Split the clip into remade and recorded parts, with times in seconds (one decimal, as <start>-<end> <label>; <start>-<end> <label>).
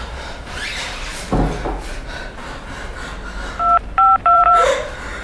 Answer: 0.0-1.1 remade; 1.1-2.1 recorded; 2.1-2.9 remade; 2.9-3.8 recorded; 3.8-5.2 remade